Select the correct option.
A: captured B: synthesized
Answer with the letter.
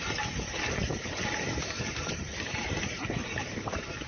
B